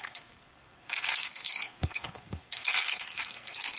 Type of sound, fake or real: fake